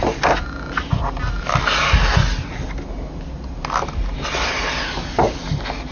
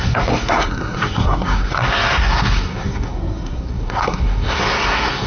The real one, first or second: first